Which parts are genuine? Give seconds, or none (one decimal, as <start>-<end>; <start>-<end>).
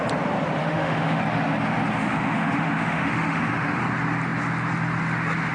0.0-0.6; 1.2-2.1; 3.8-5.5